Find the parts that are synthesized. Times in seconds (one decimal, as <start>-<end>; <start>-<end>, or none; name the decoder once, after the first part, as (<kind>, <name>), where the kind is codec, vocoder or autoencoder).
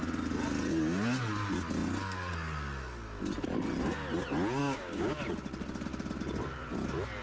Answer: 4.6-5.2 (codec, DAC)